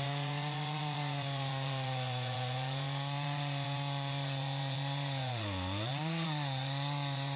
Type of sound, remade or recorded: remade